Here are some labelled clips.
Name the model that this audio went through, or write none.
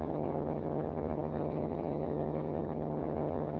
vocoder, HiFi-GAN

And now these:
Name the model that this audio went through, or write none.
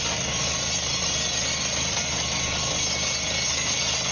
none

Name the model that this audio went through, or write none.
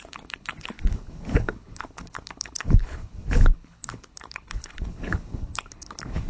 codec, HILCodec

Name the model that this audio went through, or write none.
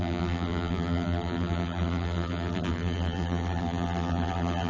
vocoder, BigVGAN v2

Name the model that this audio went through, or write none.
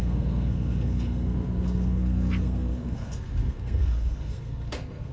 codec, SNAC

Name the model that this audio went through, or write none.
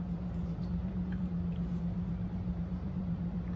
vocoder, BigVGAN v2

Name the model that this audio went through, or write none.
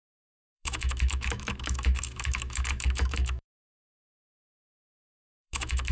autoencoder, DAC-VAE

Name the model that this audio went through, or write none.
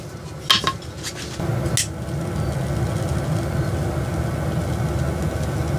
none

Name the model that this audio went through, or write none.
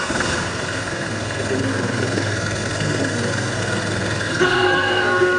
codec, SNAC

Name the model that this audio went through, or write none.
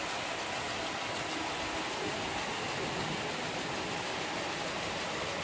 none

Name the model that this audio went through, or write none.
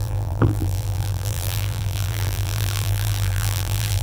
vocoder, BigVGAN v2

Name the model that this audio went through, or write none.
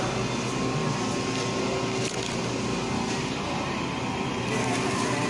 none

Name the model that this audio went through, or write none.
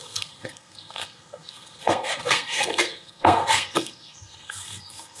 codec, SNAC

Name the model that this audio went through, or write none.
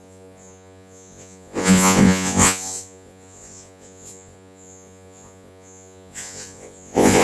vocoder, Vocos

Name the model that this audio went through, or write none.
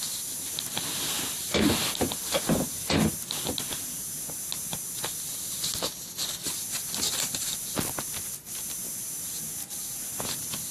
none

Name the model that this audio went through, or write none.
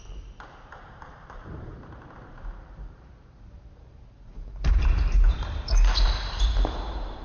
vocoder, BigVGAN v2